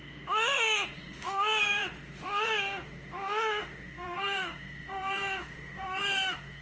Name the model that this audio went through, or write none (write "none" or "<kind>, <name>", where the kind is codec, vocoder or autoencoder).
autoencoder, DAC-VAE